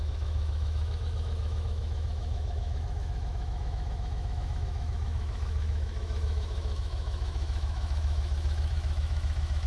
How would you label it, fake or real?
fake